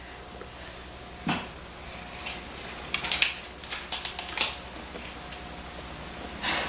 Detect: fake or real real